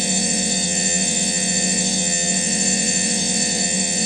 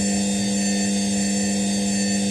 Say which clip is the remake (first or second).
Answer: first